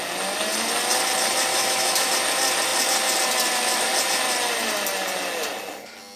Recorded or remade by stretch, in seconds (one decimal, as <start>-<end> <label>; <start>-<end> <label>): 0.0-1.5 recorded; 1.5-2.1 remade; 2.1-6.2 recorded

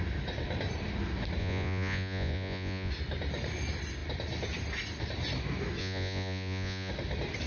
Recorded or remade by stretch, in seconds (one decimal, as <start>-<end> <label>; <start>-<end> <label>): 0.0-1.4 recorded; 1.4-2.9 remade; 2.9-5.8 recorded; 5.8-6.9 remade; 6.9-7.5 recorded

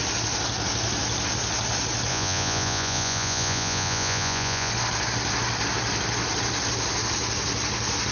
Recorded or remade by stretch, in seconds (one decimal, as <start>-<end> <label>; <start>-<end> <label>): 0.0-2.1 recorded; 2.1-4.7 remade; 4.7-8.1 recorded

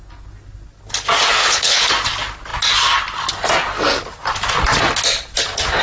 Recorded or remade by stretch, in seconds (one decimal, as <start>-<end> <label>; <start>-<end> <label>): 0.0-1.4 recorded; 1.4-1.9 remade; 1.9-5.8 recorded

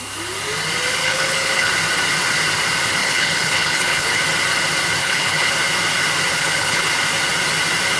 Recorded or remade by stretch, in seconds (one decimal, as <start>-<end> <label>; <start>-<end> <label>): 0.0-1.0 recorded; 1.0-1.7 remade; 1.7-3.0 recorded; 3.0-4.2 remade; 4.2-5.0 recorded; 5.0-5.5 remade; 5.5-6.3 recorded; 6.3-6.9 remade; 6.9-8.0 recorded

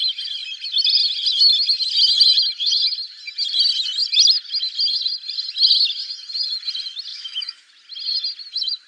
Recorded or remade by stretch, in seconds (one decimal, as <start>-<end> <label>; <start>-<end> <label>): 0.0-7.1 recorded; 7.1-7.7 remade; 7.7-8.9 recorded

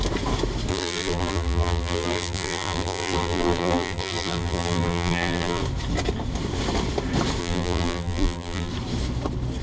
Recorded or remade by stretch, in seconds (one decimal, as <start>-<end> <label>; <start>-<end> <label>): 0.0-0.7 recorded; 0.7-5.6 remade; 5.6-7.4 recorded; 7.4-8.7 remade; 8.7-9.6 recorded